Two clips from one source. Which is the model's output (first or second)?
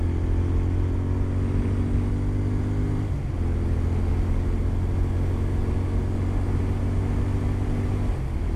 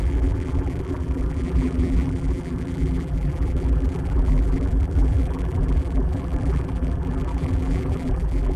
second